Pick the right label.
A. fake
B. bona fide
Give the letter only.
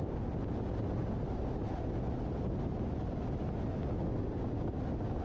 B